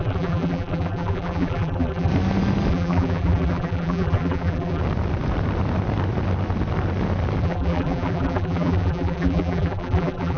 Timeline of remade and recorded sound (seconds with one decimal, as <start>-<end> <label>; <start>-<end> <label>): 0.0-2.1 remade; 2.1-2.7 recorded; 2.7-4.8 remade; 4.8-7.4 recorded; 7.4-10.4 remade